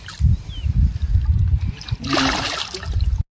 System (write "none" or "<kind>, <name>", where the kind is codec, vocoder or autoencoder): none